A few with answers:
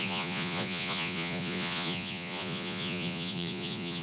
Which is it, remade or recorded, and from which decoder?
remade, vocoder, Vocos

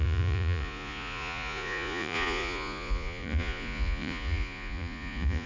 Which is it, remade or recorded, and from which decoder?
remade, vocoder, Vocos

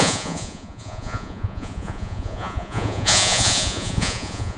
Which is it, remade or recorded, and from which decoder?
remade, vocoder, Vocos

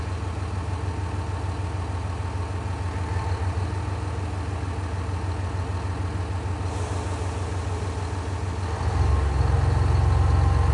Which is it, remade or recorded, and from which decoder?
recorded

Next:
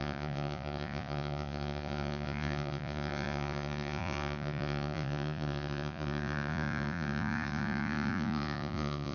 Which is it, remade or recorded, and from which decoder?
remade, vocoder, Vocos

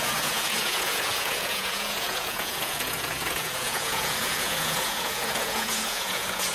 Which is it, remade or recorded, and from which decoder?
remade, vocoder, Vocos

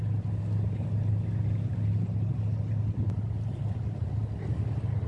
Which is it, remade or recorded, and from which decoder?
recorded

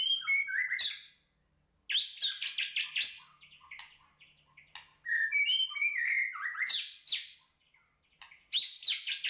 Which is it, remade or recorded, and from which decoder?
recorded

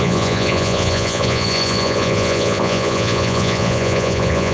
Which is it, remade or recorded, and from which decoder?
remade, vocoder, Vocos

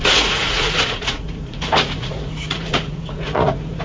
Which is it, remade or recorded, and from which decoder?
remade, vocoder, Vocos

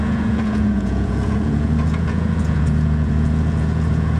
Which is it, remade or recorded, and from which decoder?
remade, vocoder, Vocos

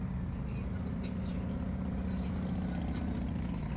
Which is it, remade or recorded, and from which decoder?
recorded